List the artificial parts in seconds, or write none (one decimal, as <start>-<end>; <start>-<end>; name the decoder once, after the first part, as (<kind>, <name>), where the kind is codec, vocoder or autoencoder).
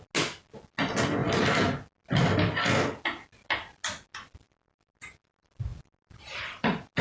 none